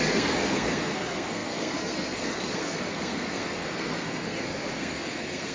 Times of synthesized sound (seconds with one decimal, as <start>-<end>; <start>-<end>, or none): 0.0-5.5